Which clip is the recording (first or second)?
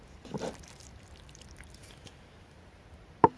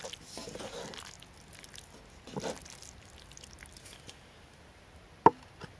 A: second